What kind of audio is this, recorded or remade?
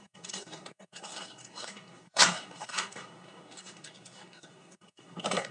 remade